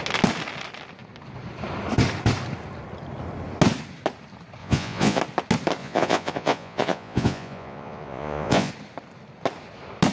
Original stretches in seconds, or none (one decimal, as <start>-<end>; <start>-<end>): 0.0-4.6; 5.2-5.8; 8.7-10.1